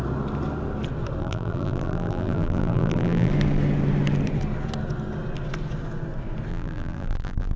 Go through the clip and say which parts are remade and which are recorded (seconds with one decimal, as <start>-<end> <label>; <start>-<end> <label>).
0.0-1.2 recorded; 1.2-3.3 remade; 3.3-6.5 recorded; 6.5-7.6 remade